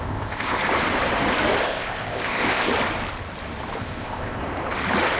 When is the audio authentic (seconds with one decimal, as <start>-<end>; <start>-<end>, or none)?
0.6-1.6; 2.7-3.8; 4.4-5.2